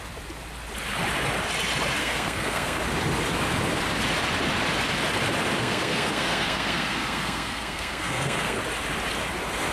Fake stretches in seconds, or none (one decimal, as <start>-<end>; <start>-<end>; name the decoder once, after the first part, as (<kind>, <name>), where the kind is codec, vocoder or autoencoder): 2.0-2.8 (codec, SNAC); 5.6-8.6